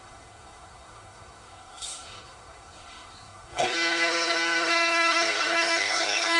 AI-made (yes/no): yes